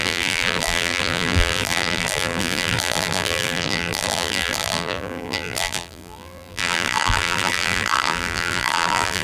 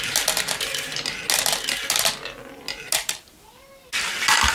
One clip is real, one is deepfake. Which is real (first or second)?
second